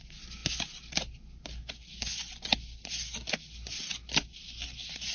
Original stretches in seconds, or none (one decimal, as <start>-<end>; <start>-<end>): 0.0-5.1